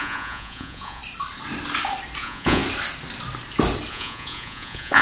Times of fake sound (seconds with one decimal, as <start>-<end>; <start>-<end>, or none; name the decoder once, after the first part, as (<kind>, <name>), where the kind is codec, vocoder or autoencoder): 0.0-1.0 (vocoder, Vocos); 2.2-2.6; 3.9-5.0